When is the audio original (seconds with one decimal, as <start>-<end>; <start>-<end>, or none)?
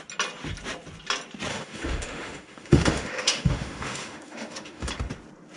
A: 0.0-1.5; 4.9-5.6